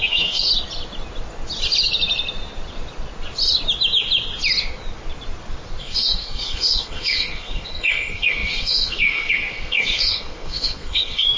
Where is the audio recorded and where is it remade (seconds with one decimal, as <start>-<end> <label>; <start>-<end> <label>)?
0.0-0.5 remade; 0.5-5.8 recorded; 5.8-11.4 remade